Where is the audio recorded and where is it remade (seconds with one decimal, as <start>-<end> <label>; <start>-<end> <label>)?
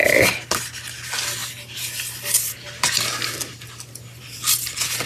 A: 0.0-5.1 recorded